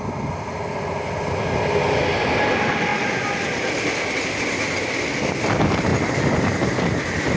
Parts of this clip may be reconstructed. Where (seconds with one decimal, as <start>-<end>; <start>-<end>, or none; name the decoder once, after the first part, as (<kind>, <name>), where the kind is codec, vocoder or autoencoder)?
none